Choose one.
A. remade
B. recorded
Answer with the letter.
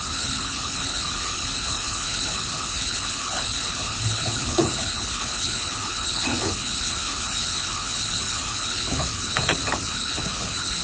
A